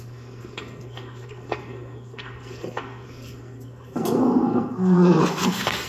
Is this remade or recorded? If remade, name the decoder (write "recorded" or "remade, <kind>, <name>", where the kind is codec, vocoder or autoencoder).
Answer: remade, codec, SNAC